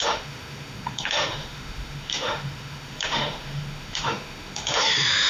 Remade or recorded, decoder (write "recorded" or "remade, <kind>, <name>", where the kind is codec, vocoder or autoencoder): remade, autoencoder, DAC-VAE